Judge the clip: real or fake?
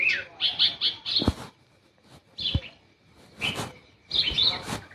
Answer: real